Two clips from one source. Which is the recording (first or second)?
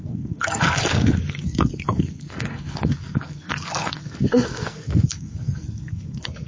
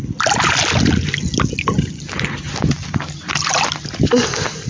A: second